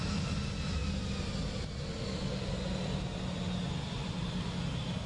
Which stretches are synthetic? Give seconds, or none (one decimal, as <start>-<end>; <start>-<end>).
none